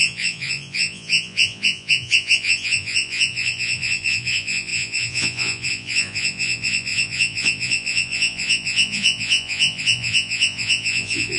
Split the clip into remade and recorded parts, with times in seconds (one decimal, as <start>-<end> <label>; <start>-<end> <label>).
0.0-11.4 remade